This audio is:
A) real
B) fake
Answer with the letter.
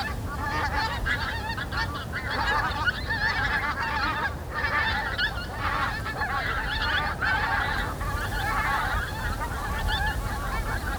A